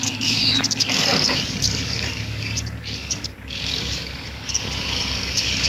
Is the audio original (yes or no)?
no